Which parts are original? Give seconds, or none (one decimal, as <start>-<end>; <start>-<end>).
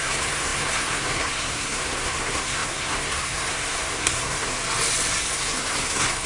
4.6-5.2